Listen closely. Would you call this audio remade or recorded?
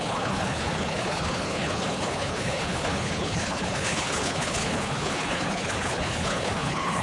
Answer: remade